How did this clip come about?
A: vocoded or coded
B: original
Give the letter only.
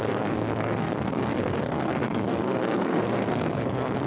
A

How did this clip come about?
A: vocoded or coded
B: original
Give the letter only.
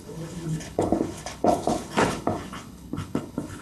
A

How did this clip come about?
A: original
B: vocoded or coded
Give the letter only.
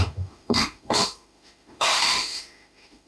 B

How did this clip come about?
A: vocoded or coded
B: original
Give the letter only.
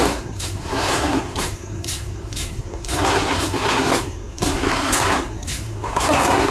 A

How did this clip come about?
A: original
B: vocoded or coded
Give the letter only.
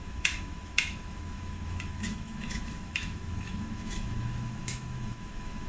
B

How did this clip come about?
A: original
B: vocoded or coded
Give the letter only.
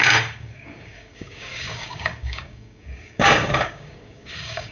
B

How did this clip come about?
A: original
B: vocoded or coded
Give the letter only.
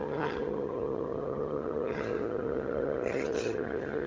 B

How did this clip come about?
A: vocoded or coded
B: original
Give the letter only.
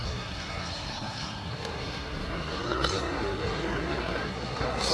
A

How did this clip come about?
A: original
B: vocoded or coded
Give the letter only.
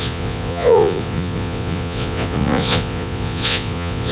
B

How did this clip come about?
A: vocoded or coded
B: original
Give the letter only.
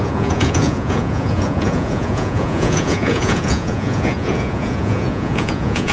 A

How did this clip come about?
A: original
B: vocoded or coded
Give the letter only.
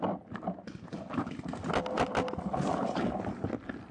A